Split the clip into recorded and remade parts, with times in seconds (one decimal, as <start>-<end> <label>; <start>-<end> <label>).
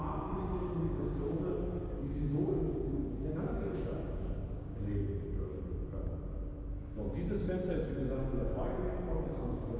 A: 0.0-5.5 remade; 5.5-9.1 recorded; 9.1-9.8 remade